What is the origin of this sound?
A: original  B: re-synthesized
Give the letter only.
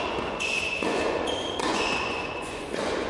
B